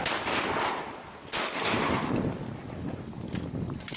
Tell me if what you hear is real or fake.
real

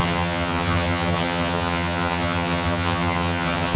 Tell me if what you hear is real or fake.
fake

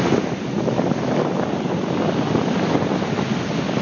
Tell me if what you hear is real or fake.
real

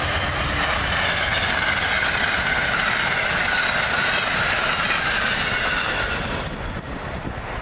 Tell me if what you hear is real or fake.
real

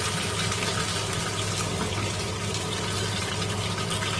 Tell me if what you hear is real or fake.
real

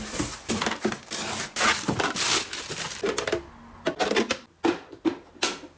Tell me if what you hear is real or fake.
real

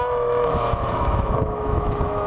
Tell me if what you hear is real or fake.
fake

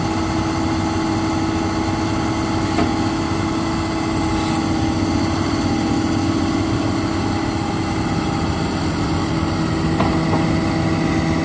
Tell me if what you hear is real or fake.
real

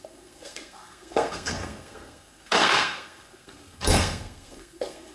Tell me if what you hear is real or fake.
fake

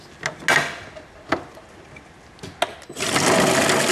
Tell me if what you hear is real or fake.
real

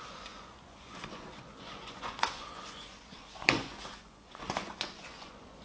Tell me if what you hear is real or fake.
fake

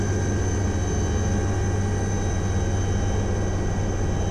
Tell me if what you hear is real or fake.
real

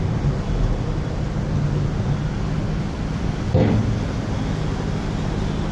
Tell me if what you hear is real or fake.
real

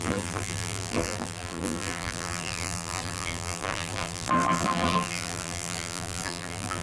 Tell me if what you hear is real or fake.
fake